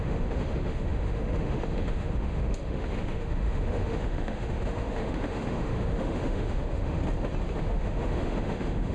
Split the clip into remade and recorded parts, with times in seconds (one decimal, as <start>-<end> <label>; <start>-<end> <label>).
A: 0.0-7.0 remade; 7.0-7.6 recorded; 7.6-8.9 remade